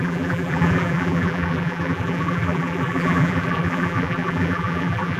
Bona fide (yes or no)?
no